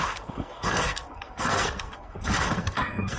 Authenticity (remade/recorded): remade